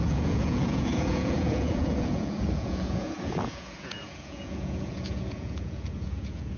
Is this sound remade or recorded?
remade